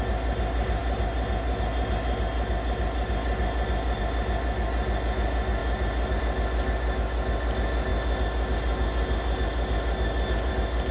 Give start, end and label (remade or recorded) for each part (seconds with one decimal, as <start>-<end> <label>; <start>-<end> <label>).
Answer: 0.0-10.9 recorded